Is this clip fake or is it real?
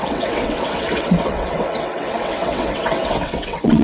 fake